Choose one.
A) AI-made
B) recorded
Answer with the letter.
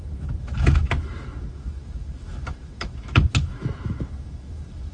A